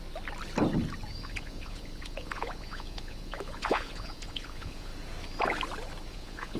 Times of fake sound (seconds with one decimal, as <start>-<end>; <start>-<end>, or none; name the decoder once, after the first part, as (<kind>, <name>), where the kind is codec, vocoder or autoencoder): 1.2-4.9 (vocoder, Vocos); 6.1-6.6